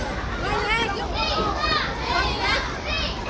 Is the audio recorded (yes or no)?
yes